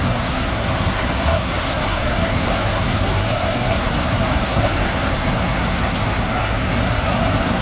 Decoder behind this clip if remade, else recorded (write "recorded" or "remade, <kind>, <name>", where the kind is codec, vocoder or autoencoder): remade, codec, SNAC